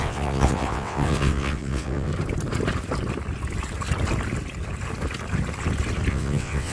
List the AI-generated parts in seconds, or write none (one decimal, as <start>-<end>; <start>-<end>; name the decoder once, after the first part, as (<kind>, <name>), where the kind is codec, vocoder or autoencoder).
0.0-2.1 (vocoder, WaveNeXt); 6.1-6.7